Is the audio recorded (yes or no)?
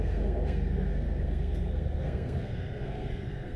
no